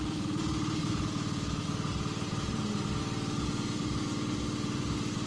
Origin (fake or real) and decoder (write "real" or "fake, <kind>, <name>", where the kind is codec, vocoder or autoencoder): real